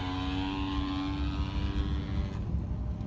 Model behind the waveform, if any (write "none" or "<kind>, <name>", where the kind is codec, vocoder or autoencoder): none